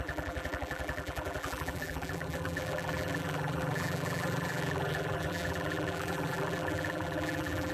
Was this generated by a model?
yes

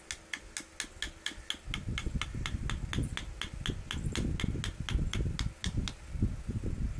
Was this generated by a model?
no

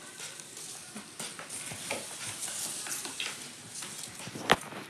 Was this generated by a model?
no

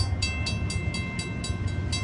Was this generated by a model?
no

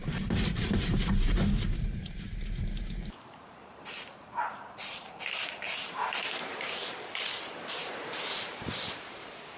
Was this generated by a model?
yes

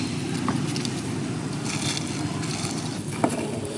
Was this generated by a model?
no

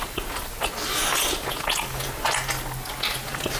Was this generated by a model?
no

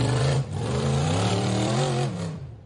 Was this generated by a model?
yes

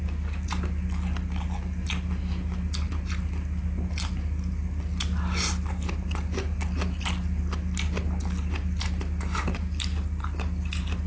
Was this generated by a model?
no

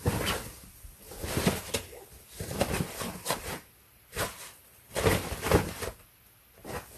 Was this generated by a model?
no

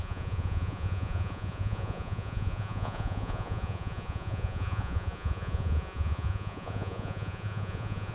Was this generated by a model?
yes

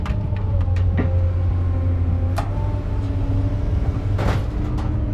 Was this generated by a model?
no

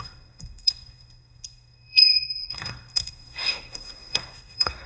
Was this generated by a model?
yes